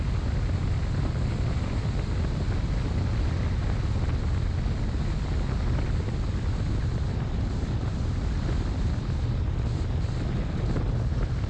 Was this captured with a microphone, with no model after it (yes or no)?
yes